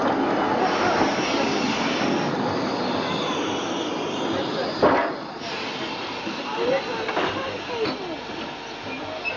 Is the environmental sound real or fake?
real